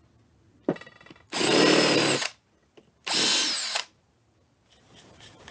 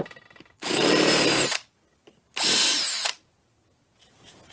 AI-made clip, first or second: second